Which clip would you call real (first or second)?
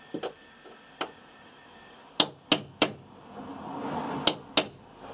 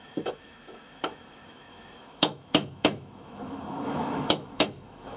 first